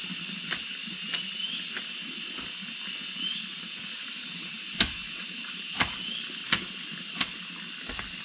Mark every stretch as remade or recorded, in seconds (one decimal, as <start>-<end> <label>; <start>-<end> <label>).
0.0-5.0 recorded; 5.0-5.5 remade; 5.5-8.2 recorded